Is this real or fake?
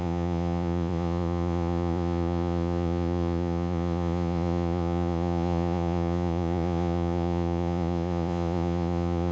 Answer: fake